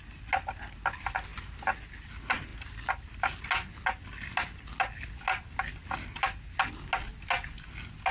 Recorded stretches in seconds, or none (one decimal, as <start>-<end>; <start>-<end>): 0.0-8.1